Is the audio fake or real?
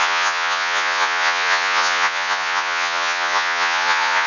fake